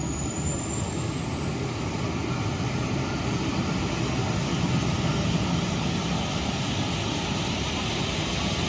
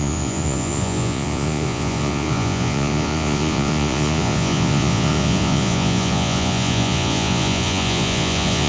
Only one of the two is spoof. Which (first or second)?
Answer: second